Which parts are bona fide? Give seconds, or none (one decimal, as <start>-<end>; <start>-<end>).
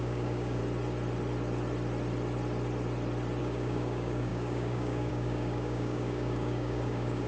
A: 0.6-3.4